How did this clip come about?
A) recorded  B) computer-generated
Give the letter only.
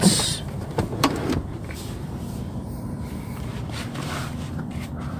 B